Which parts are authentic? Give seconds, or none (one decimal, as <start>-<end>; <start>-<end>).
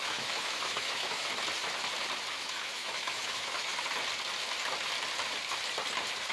1.3-2.3; 3.7-6.3